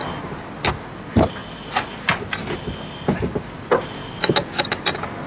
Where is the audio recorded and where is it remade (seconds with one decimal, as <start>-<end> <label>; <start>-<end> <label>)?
0.0-5.3 recorded